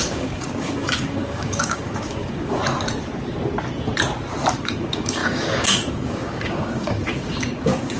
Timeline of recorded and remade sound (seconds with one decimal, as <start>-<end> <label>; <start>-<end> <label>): 0.0-2.6 remade; 2.6-4.6 recorded; 4.6-8.0 remade